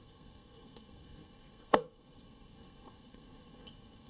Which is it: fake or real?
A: fake